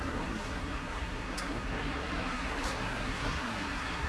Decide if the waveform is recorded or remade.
remade